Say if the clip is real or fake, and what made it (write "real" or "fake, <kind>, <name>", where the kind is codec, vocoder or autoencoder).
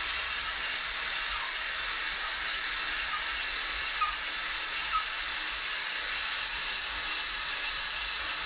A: real